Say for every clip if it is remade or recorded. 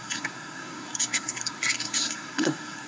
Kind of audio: remade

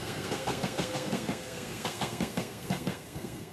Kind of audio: remade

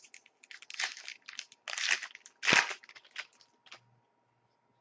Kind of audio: recorded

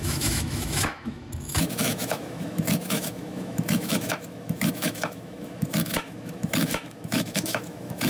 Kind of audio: remade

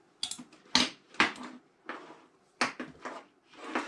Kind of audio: recorded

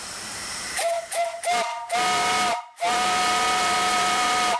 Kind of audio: remade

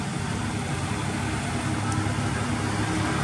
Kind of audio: recorded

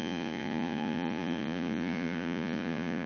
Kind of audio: remade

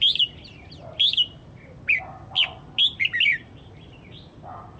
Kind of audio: recorded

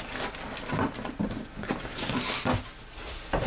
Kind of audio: recorded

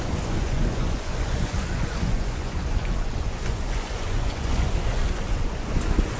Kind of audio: remade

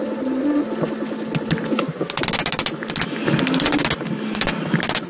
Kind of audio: recorded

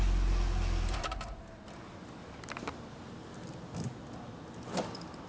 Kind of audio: recorded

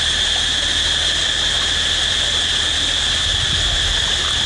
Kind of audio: remade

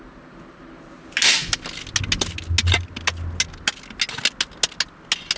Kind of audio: recorded